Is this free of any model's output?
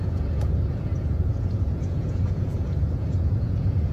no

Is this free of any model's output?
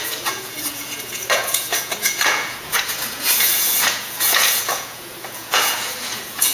no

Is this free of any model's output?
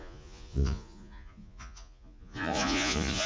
no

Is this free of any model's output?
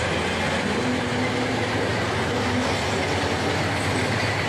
yes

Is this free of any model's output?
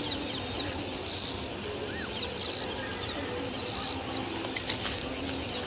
yes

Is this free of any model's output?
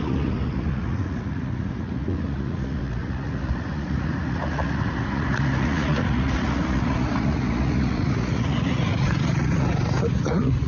no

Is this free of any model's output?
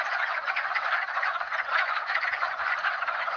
no